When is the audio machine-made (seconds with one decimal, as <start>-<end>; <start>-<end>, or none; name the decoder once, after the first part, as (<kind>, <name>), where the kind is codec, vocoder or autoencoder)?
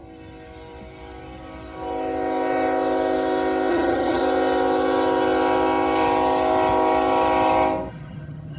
3.7-4.2 (vocoder, HiFi-GAN); 7.9-8.6